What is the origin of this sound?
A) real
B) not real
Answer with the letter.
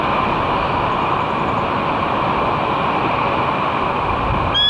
A